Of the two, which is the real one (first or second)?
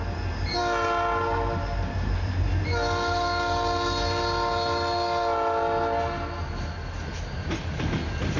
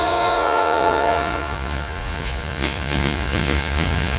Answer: first